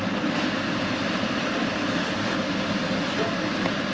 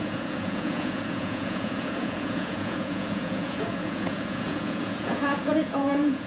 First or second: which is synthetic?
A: second